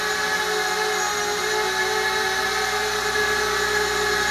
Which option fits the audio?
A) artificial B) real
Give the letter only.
B